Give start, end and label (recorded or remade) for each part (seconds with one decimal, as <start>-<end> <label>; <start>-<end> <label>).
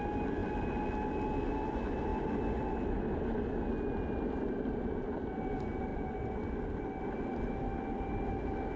0.0-8.8 recorded